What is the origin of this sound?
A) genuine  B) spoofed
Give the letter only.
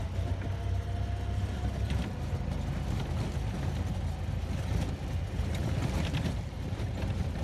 A